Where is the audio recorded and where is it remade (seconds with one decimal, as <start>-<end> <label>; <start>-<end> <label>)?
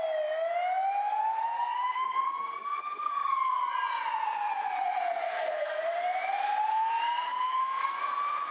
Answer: 0.0-1.4 recorded; 1.4-3.5 remade; 3.5-5.2 recorded; 5.2-5.8 remade; 5.8-6.7 recorded; 6.7-8.0 remade; 8.0-8.5 recorded